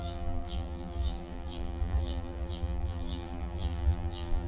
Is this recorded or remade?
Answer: remade